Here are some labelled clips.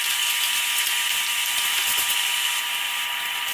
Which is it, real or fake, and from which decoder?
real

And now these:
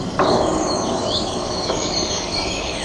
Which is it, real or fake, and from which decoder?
fake, codec, DAC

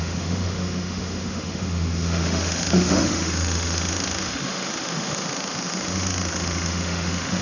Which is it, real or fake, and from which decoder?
fake, autoencoder, DAC-VAE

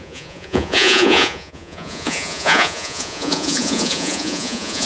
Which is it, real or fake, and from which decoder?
fake, vocoder, Vocos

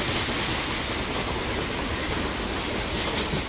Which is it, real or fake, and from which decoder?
real